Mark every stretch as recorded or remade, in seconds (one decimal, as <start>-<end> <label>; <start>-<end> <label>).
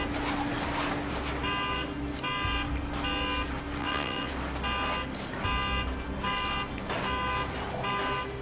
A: 0.0-3.8 recorded; 3.8-4.3 remade; 4.3-8.4 recorded